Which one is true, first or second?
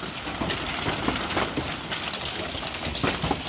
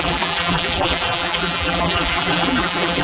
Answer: first